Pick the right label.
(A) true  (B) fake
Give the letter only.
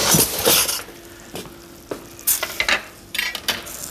A